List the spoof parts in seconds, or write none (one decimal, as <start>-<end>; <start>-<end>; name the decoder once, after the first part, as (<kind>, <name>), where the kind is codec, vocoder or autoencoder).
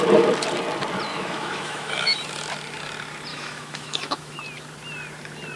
1.1-2.2 (autoencoder, DAC-VAE); 3.3-4.4